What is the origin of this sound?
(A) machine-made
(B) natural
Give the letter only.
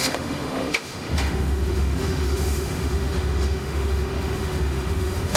A